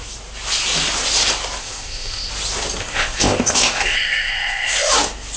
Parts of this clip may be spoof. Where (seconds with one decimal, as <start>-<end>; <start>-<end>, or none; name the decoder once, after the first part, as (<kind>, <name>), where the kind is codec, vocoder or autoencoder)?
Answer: 1.6-2.3 (codec, ZipCodec); 2.8-4.9